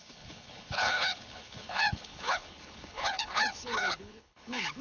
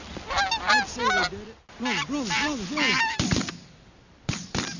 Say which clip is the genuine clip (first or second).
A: second